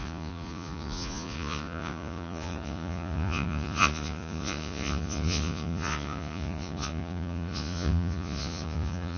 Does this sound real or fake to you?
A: fake